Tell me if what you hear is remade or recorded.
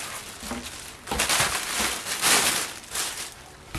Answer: recorded